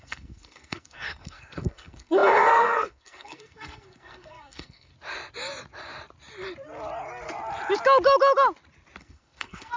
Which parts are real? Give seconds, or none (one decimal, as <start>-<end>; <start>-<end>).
4.9-9.0